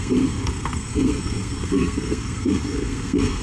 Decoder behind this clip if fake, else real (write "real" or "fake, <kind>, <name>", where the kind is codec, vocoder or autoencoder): fake, codec, SNAC